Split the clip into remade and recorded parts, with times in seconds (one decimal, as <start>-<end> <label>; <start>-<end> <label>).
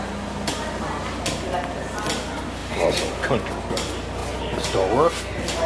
0.0-5.7 recorded